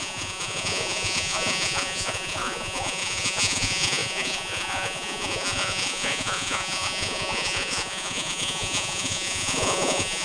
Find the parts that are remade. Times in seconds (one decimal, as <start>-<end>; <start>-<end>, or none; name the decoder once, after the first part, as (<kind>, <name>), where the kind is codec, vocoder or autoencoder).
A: 0.0-10.2 (vocoder, Vocos)